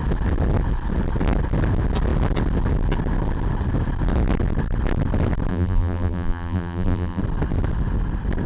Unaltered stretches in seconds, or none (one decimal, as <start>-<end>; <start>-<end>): 0.0-5.5; 7.2-8.5